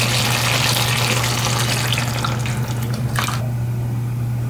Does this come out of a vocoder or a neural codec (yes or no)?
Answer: no